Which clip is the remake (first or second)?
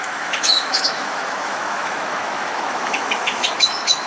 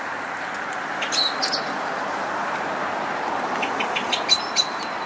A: first